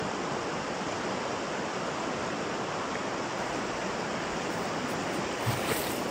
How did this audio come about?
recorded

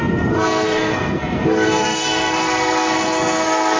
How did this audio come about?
remade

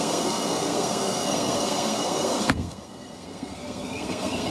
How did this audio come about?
remade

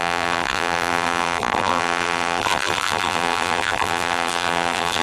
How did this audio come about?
remade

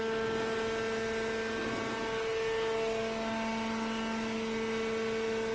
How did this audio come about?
recorded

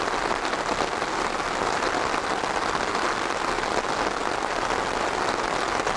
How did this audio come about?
recorded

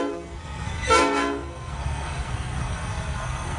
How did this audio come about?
remade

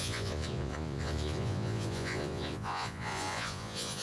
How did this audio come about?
remade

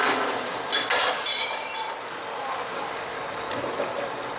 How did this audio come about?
recorded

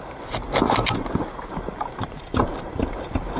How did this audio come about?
recorded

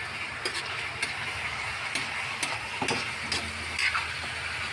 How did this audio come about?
recorded